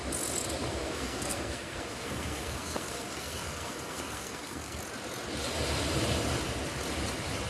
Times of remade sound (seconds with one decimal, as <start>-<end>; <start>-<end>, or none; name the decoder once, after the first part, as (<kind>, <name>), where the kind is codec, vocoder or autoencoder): 0.7-4.8 (codec, SNAC)